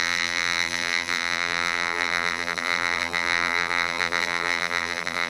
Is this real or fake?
fake